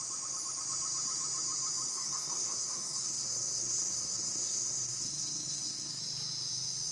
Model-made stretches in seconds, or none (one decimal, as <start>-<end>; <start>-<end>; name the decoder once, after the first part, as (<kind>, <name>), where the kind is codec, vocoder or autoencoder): 1.9-6.0 (codec, SNAC)